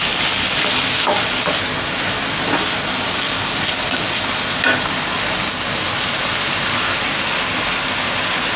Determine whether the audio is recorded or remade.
recorded